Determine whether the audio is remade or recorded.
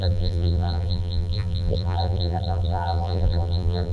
remade